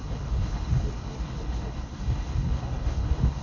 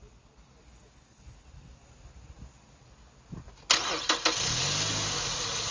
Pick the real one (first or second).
second